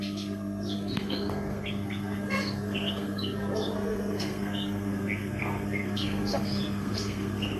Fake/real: fake